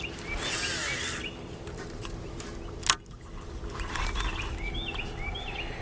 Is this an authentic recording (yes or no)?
yes